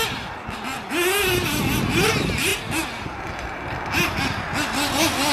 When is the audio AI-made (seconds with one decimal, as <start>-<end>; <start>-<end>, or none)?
none